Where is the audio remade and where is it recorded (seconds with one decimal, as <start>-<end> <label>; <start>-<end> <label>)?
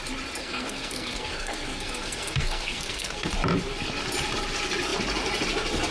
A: 0.0-0.4 recorded; 0.4-3.3 remade; 3.3-5.9 recorded